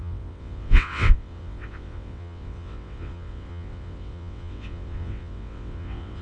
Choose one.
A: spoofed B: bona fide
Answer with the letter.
A